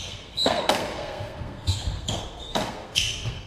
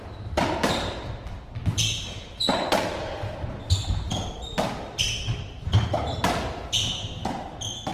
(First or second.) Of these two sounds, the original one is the second